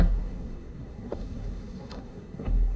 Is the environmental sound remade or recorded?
remade